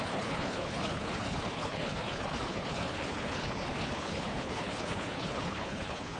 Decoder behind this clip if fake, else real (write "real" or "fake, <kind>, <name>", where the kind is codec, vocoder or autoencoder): fake, codec, HILCodec